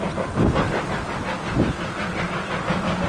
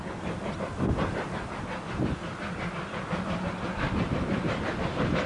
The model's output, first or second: second